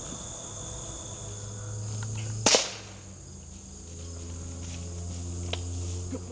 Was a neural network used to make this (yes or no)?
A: no